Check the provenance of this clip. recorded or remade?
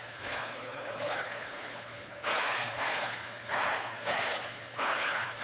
remade